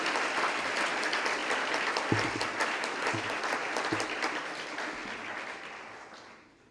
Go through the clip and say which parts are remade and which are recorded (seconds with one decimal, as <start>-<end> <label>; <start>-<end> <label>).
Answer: 0.0-6.7 recorded